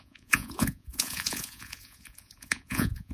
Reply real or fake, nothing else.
fake